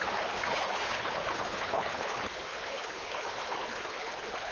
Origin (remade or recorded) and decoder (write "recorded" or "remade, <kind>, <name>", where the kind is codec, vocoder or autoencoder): remade, codec, HILCodec